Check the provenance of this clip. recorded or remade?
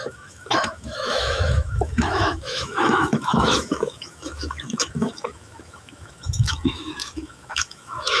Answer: remade